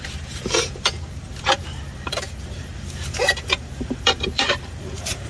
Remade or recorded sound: remade